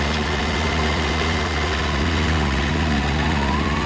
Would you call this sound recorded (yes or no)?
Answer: no